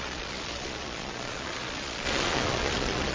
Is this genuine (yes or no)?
no